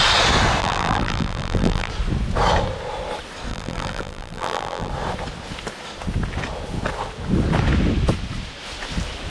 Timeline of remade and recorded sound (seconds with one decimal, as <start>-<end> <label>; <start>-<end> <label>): 0.0-0.6 recorded; 0.6-1.9 remade; 1.9-3.5 recorded; 3.5-4.9 remade; 4.9-9.3 recorded